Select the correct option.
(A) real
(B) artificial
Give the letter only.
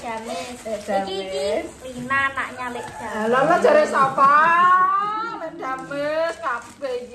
A